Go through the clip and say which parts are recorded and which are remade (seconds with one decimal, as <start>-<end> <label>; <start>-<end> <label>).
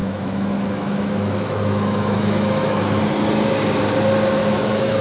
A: 0.0-3.0 remade; 3.0-4.4 recorded; 4.4-5.0 remade